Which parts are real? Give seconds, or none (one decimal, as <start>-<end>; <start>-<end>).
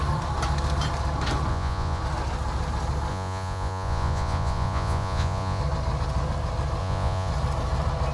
0.0-1.5; 2.0-3.1; 5.6-6.8; 7.3-8.1